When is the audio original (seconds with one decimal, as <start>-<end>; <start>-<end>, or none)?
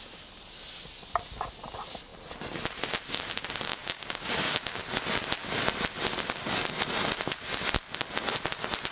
0.0-3.7; 4.8-8.9